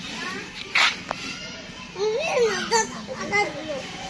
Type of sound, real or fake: real